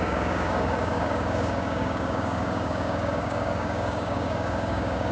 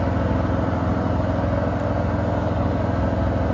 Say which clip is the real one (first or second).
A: second